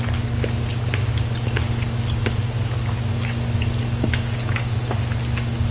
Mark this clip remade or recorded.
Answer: recorded